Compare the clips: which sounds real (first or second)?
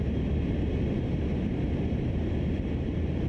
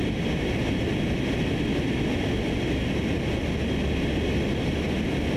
second